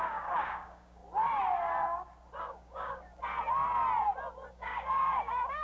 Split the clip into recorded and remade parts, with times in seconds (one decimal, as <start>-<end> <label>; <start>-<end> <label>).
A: 0.0-1.0 remade; 1.0-2.4 recorded; 2.4-3.1 remade; 3.1-4.5 recorded; 4.5-5.6 remade